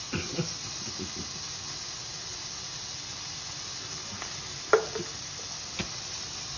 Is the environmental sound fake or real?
real